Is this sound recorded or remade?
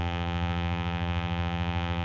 remade